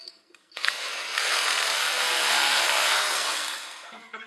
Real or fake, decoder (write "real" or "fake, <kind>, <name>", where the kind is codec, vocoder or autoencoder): fake, codec, SNAC